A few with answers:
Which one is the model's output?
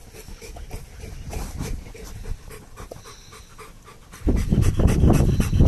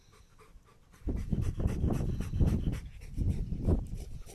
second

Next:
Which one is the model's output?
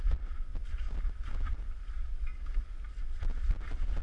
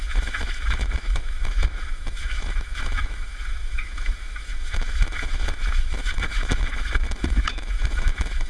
second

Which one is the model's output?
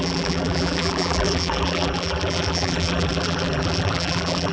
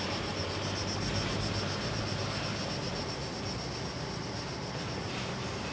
first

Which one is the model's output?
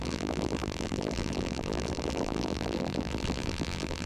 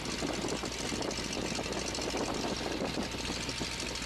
first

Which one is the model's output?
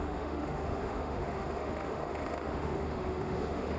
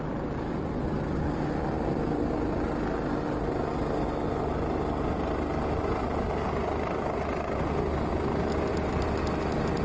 first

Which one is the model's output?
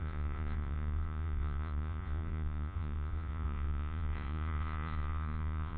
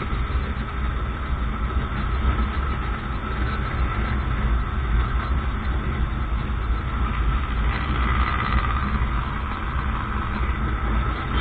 first